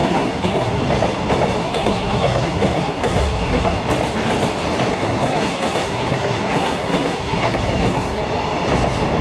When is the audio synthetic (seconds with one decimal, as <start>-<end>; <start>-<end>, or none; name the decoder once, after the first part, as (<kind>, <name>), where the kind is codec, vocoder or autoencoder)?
0.0-0.8 (codec, SNAC); 1.6-3.8; 4.9-8.2